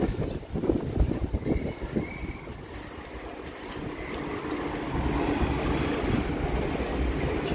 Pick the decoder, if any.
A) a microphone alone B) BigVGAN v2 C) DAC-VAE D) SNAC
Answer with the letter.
A